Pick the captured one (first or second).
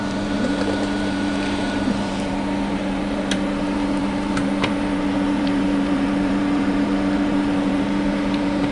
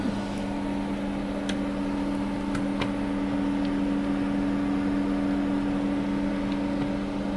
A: second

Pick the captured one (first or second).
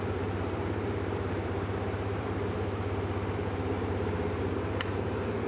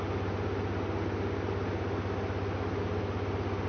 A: second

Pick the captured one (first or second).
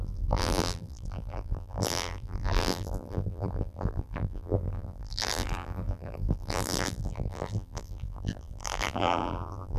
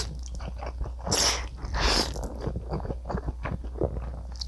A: second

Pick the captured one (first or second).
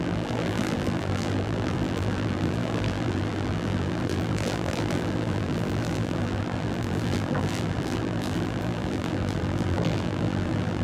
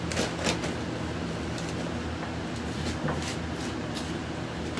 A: second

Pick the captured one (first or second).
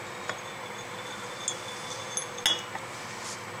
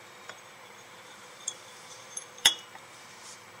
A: first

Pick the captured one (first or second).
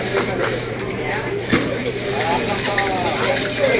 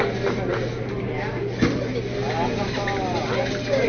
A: second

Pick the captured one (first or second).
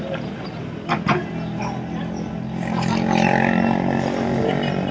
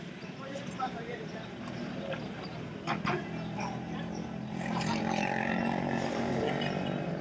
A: first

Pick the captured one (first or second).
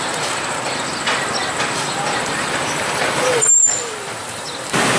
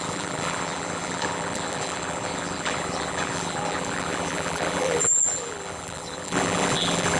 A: first